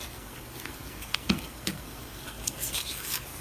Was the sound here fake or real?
fake